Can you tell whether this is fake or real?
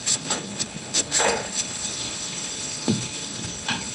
fake